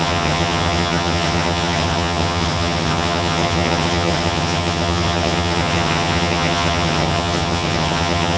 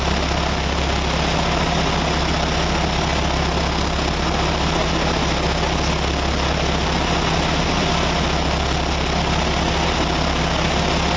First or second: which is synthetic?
first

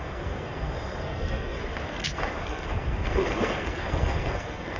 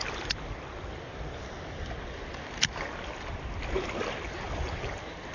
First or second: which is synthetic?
first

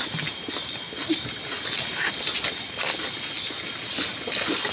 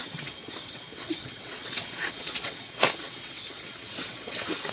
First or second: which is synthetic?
second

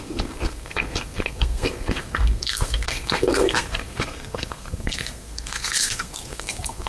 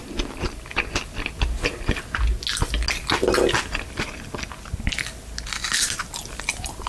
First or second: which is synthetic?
first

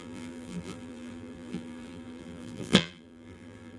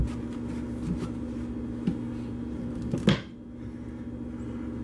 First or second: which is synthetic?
first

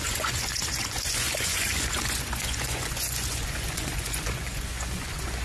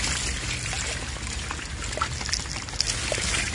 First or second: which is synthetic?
first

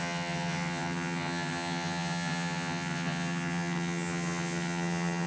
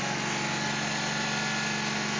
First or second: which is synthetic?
first